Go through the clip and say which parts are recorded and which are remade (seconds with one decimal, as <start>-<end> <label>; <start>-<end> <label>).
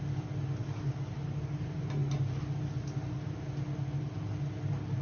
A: 0.0-5.0 recorded